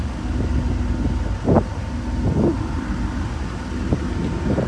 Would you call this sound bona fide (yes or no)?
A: yes